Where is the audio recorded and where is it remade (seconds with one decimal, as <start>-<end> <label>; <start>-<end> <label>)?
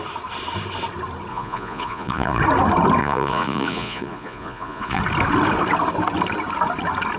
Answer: 0.0-1.3 recorded; 1.3-2.4 remade; 2.4-3.0 recorded; 3.0-5.0 remade; 5.0-7.2 recorded